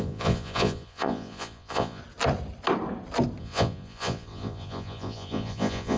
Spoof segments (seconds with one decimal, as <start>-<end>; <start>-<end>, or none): 0.0-2.0; 3.4-6.0